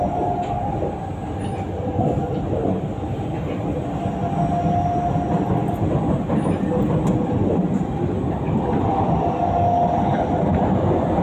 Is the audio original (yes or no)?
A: yes